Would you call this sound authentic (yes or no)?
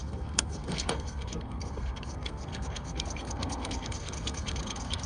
no